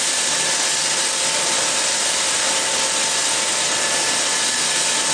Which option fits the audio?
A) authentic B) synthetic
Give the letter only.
A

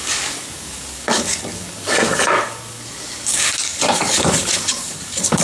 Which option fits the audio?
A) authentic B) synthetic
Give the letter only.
B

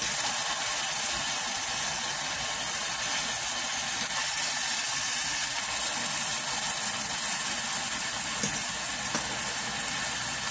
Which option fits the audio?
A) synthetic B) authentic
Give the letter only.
B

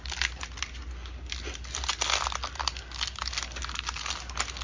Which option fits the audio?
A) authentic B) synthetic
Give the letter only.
A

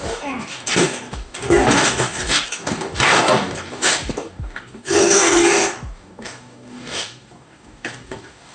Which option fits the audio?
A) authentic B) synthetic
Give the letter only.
B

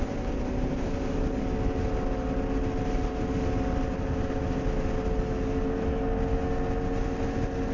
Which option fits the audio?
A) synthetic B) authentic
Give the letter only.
B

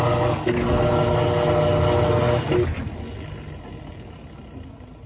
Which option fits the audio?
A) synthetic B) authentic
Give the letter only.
B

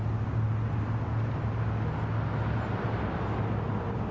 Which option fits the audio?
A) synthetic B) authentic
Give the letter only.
B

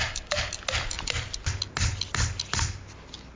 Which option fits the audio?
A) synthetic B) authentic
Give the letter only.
B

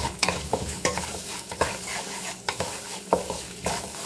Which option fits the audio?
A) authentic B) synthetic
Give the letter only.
B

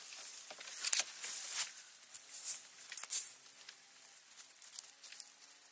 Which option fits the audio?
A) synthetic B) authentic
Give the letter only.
B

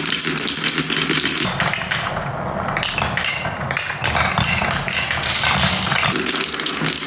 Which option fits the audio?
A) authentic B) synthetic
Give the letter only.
A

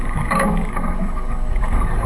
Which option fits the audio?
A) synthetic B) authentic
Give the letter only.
A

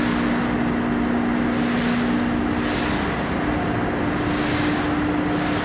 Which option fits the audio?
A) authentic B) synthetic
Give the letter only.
A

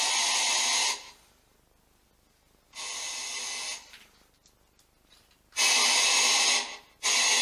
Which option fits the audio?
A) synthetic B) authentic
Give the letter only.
B